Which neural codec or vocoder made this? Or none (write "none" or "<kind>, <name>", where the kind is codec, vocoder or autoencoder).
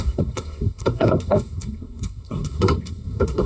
codec, SNAC